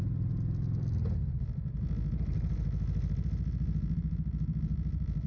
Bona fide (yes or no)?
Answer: yes